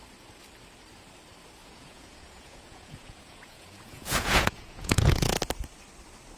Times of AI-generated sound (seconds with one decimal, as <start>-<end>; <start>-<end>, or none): 1.6-5.4